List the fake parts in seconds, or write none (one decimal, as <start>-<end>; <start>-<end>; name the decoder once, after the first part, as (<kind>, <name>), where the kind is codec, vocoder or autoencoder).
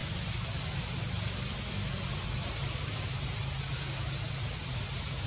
3.2-3.7 (vocoder, BigVGAN v2); 4.6-5.3